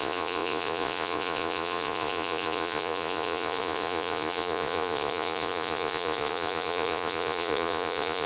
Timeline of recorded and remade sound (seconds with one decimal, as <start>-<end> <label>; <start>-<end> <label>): 0.0-8.3 remade